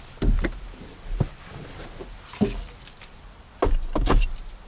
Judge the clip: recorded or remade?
recorded